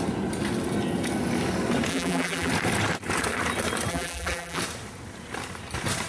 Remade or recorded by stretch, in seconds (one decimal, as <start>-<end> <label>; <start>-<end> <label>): 0.0-1.9 recorded; 1.9-2.5 remade; 2.5-3.9 recorded; 3.9-4.6 remade; 4.6-6.1 recorded

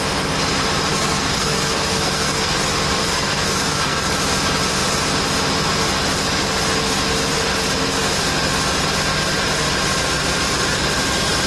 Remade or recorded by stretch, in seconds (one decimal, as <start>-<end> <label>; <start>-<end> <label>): 0.0-0.9 recorded; 0.9-2.6 remade; 2.6-3.0 recorded; 3.0-4.1 remade; 4.1-11.5 recorded